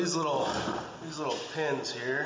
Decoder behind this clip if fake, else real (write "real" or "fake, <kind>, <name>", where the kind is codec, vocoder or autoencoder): real